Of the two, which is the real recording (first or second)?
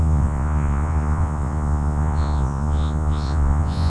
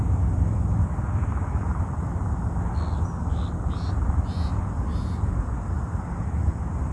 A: second